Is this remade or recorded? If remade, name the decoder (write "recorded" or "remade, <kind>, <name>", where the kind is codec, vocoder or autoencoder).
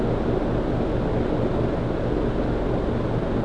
recorded